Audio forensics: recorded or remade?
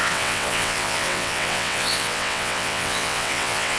remade